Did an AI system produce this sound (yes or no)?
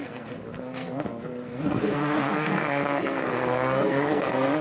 yes